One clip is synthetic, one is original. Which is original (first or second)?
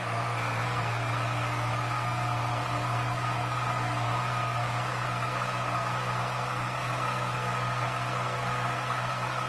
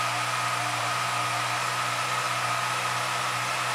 second